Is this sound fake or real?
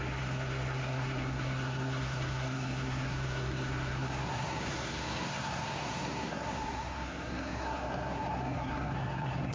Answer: fake